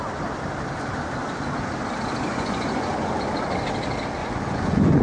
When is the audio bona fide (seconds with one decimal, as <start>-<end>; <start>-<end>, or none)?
0.0-2.3; 3.1-4.2